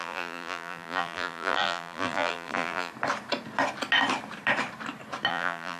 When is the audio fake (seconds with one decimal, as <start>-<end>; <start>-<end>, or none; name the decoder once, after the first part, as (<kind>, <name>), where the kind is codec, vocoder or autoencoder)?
0.0-2.9 (vocoder, BigVGAN v2); 5.3-5.8